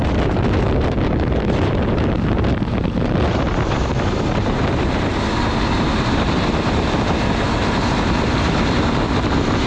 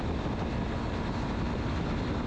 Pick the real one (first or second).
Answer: second